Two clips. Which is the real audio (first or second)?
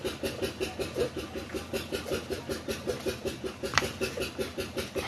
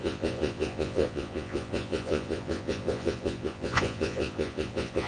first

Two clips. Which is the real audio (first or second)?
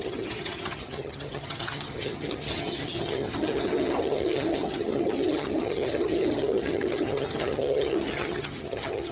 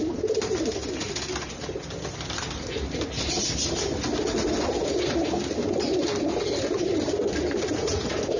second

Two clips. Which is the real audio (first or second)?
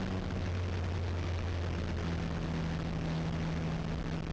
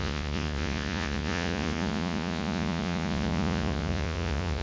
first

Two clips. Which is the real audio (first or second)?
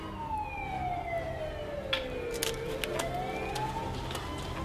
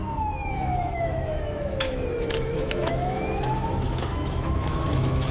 first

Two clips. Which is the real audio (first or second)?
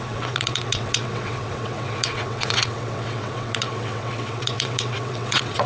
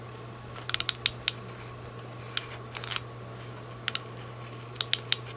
second